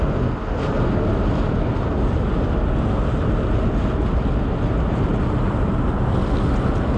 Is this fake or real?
real